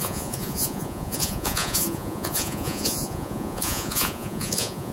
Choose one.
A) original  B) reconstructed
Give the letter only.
B